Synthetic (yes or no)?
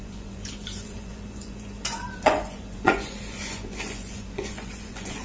yes